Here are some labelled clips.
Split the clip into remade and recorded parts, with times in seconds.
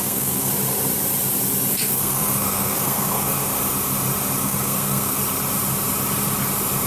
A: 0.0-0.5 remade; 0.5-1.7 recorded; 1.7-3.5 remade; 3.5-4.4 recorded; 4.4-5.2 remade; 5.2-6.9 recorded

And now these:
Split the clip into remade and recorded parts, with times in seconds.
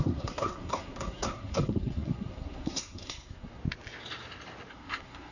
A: 0.0-3.6 remade; 3.6-4.7 recorded; 4.7-5.3 remade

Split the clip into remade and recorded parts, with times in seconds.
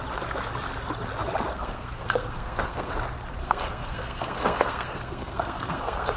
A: 0.0-1.5 recorded; 1.5-2.9 remade; 2.9-3.4 recorded; 3.4-6.2 remade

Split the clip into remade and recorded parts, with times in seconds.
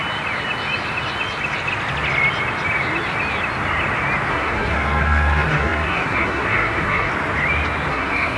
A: 0.0-4.3 recorded; 4.3-7.1 remade; 7.1-7.9 recorded; 7.9-8.4 remade